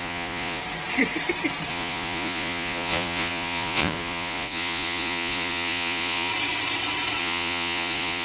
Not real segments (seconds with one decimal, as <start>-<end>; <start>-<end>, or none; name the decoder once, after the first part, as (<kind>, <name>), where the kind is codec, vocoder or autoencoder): 0.0-0.6 (vocoder, Vocos); 1.7-6.3; 7.2-8.2